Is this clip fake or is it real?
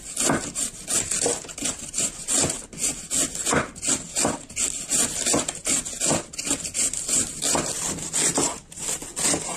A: real